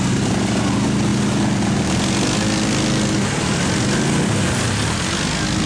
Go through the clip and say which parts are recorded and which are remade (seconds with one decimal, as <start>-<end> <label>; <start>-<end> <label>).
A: 0.0-5.7 recorded